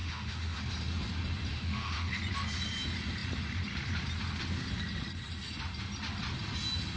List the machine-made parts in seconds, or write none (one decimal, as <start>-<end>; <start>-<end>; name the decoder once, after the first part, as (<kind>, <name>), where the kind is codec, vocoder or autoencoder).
0.0-0.6 (autoencoder, DAC-VAE); 1.5-2.2